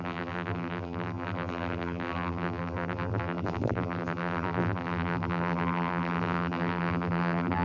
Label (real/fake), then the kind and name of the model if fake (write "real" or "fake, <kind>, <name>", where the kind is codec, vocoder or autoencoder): fake, vocoder, BigVGAN v2